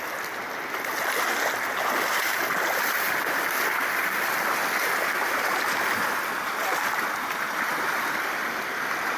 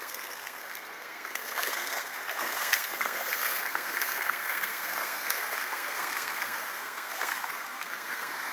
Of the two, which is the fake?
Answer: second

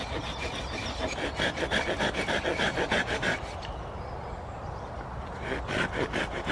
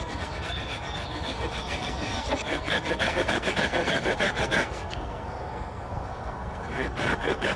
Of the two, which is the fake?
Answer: second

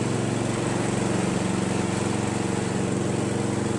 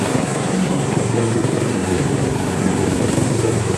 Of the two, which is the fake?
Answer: second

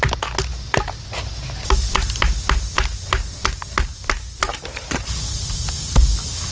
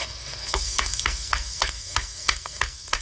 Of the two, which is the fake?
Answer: second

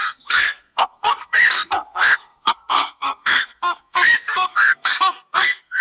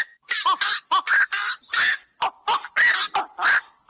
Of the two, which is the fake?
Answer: first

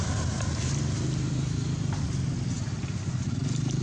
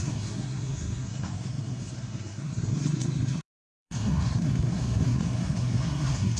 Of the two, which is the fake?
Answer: second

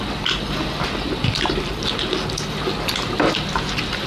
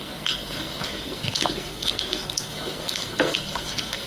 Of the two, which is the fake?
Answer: second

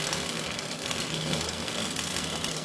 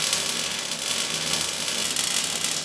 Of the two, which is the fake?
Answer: first